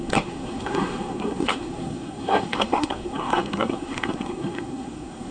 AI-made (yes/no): yes